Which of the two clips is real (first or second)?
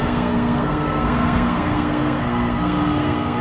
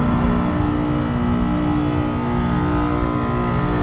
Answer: second